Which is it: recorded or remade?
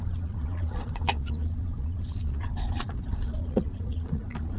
remade